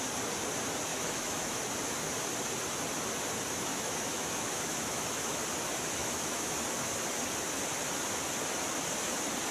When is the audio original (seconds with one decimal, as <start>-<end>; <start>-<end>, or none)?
0.0-0.9; 1.6-3.7; 5.4-6.0; 6.6-9.5